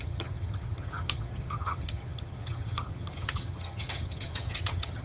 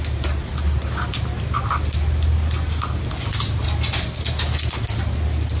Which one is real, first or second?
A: second